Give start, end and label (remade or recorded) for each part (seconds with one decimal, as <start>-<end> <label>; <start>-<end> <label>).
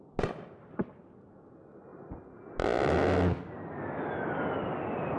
0.0-5.2 recorded